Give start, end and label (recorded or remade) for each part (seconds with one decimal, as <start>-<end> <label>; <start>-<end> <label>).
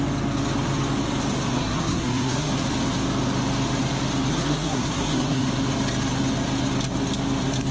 0.0-1.5 recorded; 1.5-2.5 remade; 2.5-4.3 recorded; 4.3-5.5 remade; 5.5-7.7 recorded